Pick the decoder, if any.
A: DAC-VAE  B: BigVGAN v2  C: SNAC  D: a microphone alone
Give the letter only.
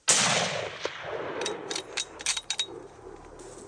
D